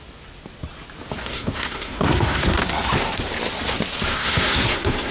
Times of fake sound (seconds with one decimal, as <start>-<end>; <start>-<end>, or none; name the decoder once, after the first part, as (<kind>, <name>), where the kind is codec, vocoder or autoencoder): 1.2-2.6 (codec, SNAC); 4.1-5.1